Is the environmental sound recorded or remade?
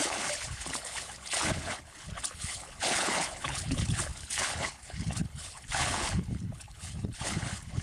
remade